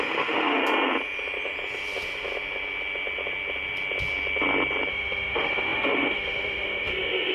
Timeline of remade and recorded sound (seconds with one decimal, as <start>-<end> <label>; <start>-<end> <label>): 0.0-0.6 remade; 0.6-4.9 recorded; 4.9-7.3 remade